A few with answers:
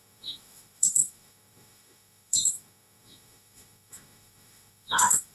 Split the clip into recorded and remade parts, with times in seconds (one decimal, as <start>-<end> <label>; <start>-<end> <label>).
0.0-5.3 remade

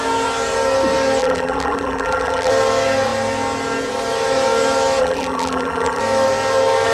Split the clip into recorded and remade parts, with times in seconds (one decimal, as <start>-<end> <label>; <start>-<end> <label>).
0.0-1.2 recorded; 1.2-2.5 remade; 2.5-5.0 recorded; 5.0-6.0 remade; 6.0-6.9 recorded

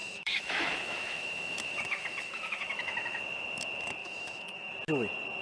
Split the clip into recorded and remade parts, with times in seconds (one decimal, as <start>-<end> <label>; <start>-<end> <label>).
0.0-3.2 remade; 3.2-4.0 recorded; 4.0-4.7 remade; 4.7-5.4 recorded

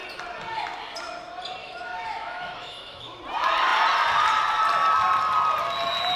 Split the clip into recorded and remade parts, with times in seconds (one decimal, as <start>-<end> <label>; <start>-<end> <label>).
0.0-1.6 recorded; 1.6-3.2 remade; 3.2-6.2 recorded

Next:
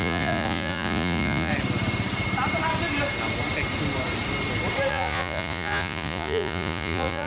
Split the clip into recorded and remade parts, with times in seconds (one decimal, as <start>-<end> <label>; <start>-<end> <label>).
0.0-1.5 remade; 1.5-4.9 recorded; 4.9-7.3 remade